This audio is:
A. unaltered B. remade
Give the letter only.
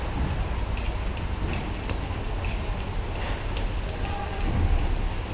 A